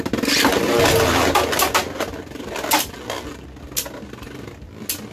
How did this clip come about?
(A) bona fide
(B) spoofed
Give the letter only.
A